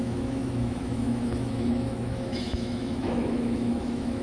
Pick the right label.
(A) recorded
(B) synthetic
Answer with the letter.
B